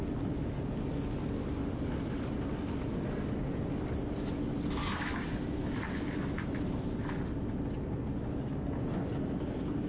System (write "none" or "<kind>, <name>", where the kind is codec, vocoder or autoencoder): none